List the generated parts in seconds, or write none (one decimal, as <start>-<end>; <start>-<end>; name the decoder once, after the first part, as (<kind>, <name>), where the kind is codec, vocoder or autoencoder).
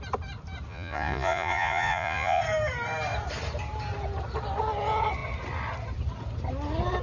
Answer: 0.7-2.4 (vocoder, Vocos)